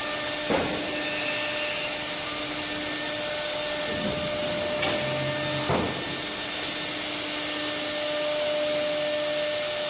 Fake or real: real